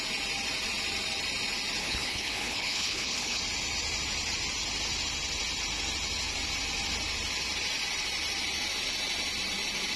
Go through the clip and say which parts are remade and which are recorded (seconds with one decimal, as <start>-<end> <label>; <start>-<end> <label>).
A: 0.0-1.8 recorded; 1.8-3.4 remade; 3.4-10.0 recorded